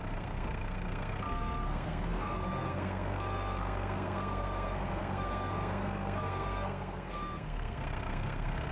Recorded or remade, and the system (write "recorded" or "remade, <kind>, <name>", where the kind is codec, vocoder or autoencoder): remade, codec, SNAC